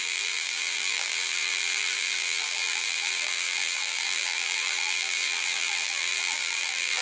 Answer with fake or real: fake